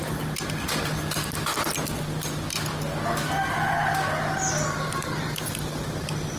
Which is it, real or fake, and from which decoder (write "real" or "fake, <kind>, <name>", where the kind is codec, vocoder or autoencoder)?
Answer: real